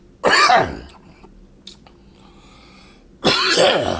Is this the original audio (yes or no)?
yes